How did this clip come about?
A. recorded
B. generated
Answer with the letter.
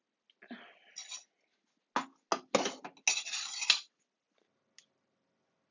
A